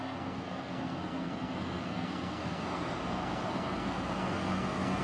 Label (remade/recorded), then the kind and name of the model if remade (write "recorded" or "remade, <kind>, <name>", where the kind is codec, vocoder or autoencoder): remade, codec, SNAC